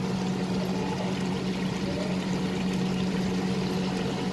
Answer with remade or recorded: recorded